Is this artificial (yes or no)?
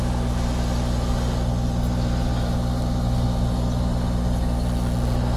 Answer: no